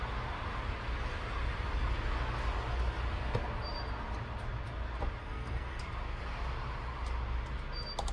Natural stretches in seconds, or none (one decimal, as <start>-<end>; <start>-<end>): 0.0-5.2; 5.8-8.1